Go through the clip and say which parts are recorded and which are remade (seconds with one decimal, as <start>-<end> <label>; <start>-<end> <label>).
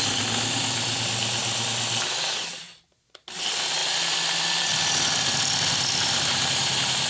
0.0-7.1 recorded